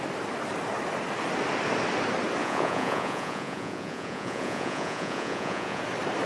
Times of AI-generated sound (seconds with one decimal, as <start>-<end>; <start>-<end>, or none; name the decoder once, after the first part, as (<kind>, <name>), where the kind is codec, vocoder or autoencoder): 2.4-5.8 (vocoder, Vocos)